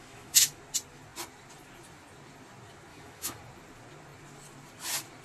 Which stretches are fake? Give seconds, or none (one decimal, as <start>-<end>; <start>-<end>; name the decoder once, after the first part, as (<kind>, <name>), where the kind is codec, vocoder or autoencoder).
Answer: 0.0-0.6 (autoencoder, DAC-VAE); 2.9-3.4